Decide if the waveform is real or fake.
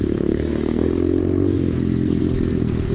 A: fake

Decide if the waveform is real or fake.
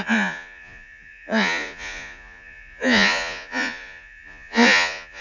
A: fake